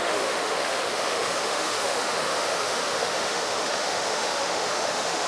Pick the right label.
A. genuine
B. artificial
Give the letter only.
B